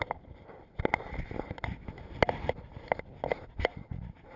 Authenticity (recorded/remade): recorded